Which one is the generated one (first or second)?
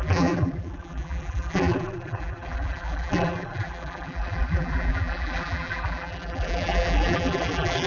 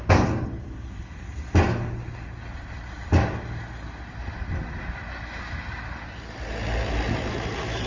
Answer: first